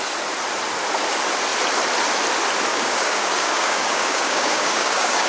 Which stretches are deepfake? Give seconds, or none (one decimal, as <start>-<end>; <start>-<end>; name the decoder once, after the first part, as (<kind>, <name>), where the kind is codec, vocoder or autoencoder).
2.7-5.3 (codec, DAC)